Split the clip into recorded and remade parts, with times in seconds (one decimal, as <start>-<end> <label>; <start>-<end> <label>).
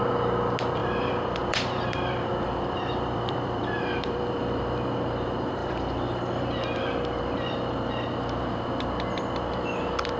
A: 0.0-0.8 recorded; 0.8-4.6 remade; 4.6-5.6 recorded; 5.6-7.9 remade; 7.9-10.2 recorded